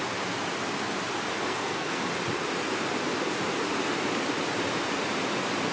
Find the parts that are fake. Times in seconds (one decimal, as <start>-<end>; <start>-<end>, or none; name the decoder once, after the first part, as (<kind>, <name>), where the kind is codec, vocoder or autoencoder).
1.4-2.1 (codec, SNAC)